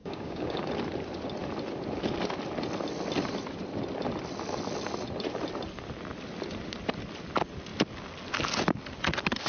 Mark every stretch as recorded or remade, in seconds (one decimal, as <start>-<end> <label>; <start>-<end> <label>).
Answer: 0.0-0.7 remade; 0.7-9.5 recorded